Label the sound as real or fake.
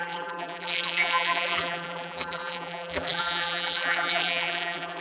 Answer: fake